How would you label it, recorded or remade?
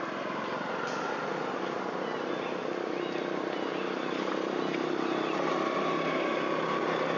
recorded